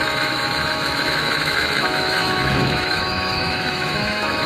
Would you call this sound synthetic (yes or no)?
yes